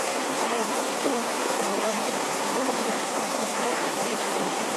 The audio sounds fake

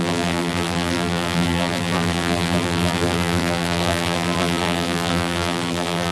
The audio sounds fake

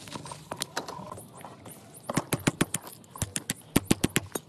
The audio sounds real